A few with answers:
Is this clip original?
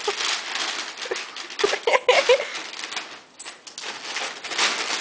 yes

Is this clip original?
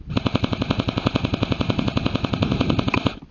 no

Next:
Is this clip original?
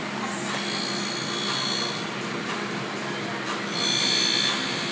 yes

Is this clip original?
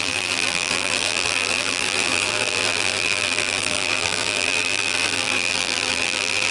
no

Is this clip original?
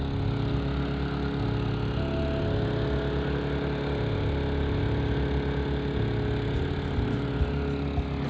yes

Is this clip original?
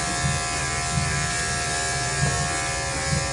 yes